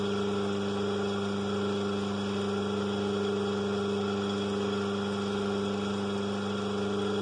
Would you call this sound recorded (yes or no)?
yes